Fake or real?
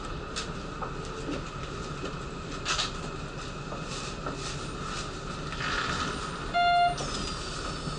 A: real